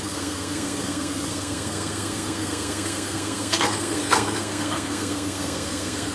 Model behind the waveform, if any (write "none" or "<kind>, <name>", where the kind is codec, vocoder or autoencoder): codec, SNAC